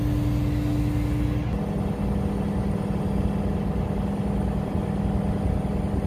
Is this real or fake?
real